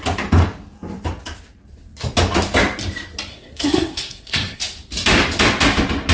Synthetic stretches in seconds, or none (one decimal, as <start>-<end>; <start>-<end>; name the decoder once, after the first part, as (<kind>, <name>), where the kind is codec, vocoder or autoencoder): 3.3-4.6 (codec, SNAC)